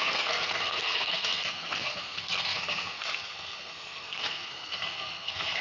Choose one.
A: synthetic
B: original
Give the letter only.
A